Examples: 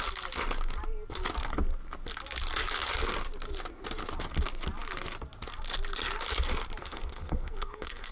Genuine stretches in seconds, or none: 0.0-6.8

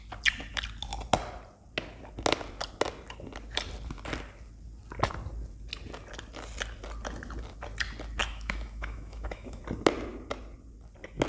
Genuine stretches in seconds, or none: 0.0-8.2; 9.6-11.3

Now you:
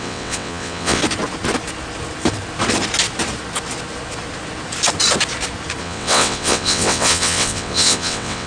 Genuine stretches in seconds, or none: 1.0-5.8